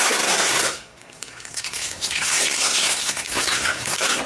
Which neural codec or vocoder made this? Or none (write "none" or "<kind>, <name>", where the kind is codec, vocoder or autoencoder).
codec, SNAC